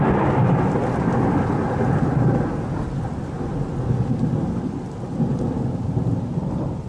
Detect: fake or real real